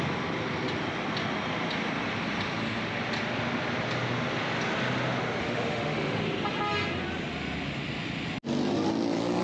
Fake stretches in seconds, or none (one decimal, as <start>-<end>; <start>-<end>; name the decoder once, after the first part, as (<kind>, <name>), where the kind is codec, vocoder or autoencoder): 5.4-6.2 (autoencoder, DAC-VAE)